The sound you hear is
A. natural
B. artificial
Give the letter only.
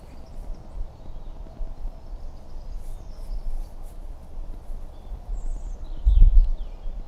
A